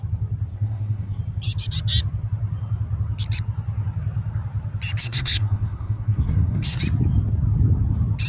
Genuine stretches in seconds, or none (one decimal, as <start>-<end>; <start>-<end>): 0.0-0.5; 1.2-5.0; 6.8-8.3